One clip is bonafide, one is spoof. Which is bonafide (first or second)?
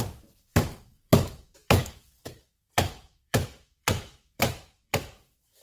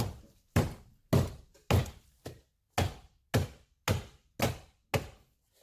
second